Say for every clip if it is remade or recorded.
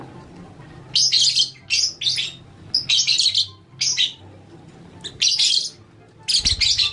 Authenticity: recorded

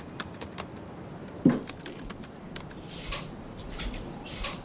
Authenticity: remade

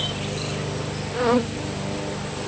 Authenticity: recorded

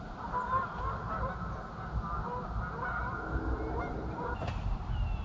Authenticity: recorded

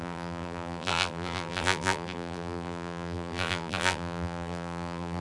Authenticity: remade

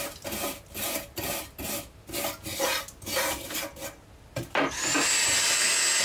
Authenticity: recorded